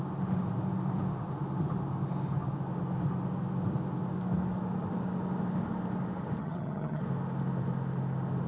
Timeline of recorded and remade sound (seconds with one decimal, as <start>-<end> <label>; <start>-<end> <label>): 0.0-6.4 recorded; 6.4-7.0 remade; 7.0-8.5 recorded